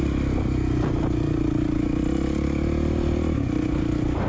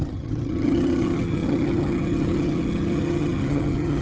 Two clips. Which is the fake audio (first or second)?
second